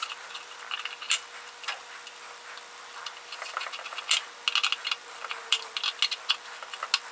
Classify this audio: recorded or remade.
recorded